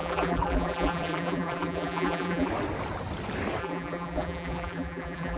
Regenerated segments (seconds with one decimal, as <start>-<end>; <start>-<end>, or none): 0.0-2.5; 3.6-5.4